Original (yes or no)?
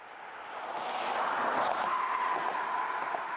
yes